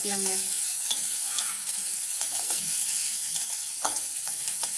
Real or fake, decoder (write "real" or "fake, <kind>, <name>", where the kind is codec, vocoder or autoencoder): fake, codec, SNAC